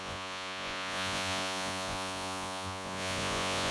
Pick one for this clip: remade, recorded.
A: remade